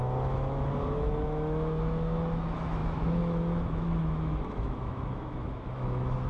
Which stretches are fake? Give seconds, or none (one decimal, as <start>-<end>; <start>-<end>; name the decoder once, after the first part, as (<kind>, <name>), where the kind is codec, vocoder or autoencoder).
0.0-6.3 (autoencoder, DAC-VAE)